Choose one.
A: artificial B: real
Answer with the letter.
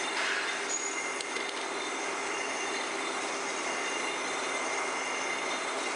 A